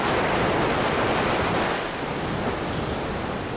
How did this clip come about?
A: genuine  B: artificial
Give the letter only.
A